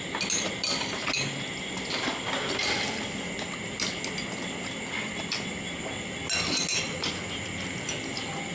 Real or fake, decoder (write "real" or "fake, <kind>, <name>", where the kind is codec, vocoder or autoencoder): real